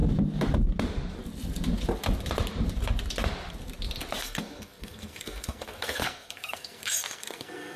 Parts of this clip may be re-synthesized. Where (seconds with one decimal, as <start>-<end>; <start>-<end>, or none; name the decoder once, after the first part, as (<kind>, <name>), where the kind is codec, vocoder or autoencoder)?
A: 4.2-7.8 (codec, SNAC)